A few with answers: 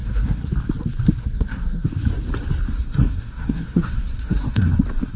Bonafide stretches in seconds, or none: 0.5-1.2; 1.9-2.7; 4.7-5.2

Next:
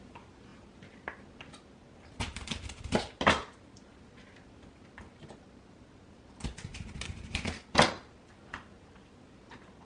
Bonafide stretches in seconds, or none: 0.0-9.9

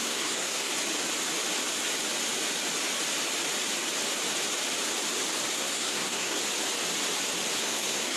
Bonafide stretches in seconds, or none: 0.7-5.5; 6.4-7.6

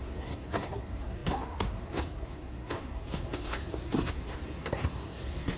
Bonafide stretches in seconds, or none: none

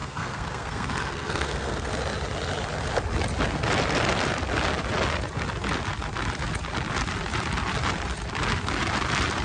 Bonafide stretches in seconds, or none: 1.9-9.4

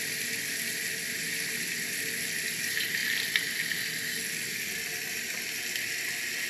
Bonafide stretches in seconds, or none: 0.0-6.5

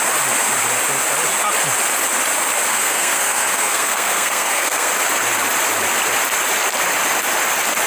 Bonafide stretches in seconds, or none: 0.0-2.7; 4.9-7.9